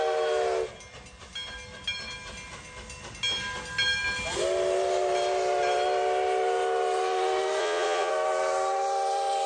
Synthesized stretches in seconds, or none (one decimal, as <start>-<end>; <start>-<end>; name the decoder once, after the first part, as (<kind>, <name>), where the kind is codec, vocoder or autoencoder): 7.6-8.1 (vocoder, Vocos)